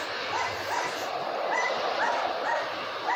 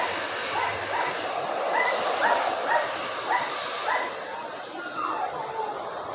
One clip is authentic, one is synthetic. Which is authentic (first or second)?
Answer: second